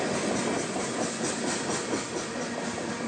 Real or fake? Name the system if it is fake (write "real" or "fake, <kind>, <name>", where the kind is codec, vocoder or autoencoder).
real